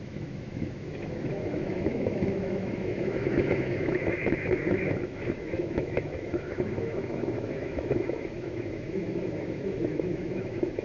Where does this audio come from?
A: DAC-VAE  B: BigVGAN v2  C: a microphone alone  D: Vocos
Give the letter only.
A